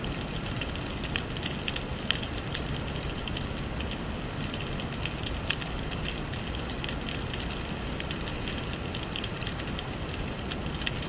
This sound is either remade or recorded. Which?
recorded